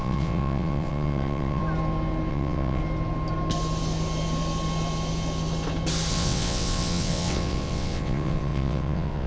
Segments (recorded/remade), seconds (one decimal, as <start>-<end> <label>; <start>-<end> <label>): 0.0-1.6 remade; 1.6-2.3 recorded; 2.3-2.8 remade; 2.8-6.1 recorded; 6.1-9.3 remade